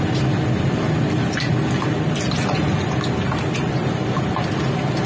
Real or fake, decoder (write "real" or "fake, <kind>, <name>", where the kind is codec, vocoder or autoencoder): real